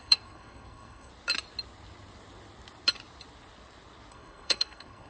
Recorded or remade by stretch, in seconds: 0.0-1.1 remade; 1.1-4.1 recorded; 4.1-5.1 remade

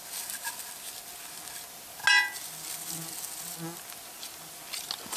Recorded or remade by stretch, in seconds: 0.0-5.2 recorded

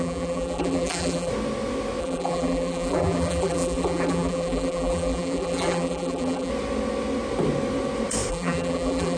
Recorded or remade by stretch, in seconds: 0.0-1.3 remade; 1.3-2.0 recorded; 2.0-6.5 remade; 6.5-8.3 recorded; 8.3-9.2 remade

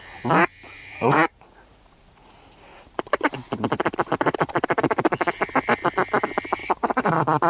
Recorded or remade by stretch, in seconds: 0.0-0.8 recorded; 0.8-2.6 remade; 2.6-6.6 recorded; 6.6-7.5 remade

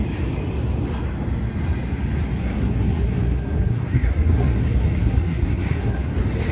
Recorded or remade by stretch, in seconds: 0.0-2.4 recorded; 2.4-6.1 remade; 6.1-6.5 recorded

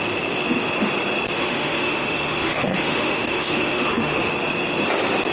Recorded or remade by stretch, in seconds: 0.0-1.4 recorded; 1.4-4.3 remade; 4.3-5.3 recorded

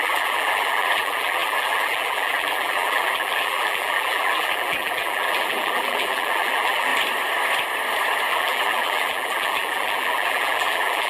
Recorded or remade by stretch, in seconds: 0.0-6.9 remade; 6.9-8.3 recorded; 8.3-11.1 remade